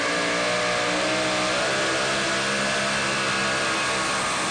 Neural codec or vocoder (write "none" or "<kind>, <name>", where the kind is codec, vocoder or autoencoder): none